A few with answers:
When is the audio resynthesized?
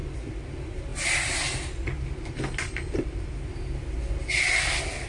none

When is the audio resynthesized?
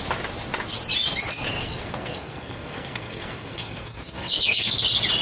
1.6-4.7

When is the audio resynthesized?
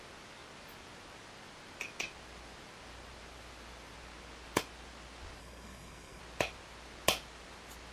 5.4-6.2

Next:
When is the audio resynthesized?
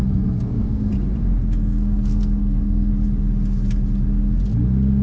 0.0-0.9; 1.4-2.9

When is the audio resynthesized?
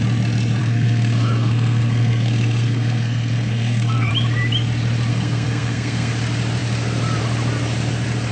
0.6-4.1; 5.1-6.1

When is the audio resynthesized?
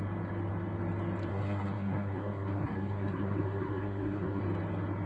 1.3-4.4